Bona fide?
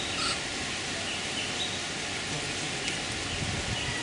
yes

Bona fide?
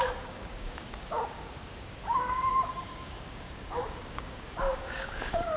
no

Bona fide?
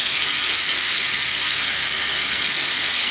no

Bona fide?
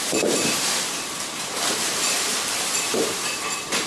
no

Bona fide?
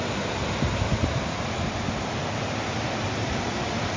yes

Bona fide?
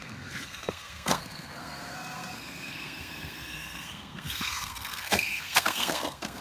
no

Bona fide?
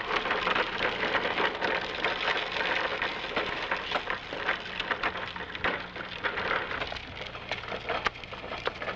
yes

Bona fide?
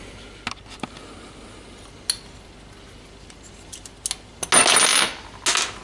yes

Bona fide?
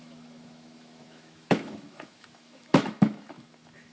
no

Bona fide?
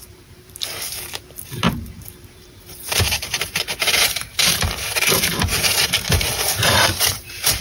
no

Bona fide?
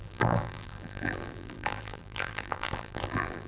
no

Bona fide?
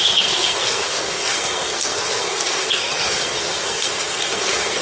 no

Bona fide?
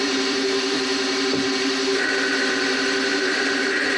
no